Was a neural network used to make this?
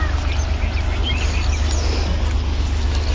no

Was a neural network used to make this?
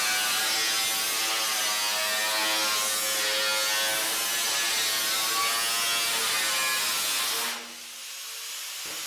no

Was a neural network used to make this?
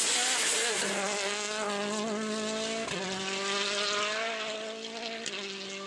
no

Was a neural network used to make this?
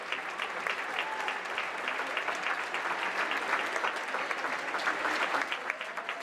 no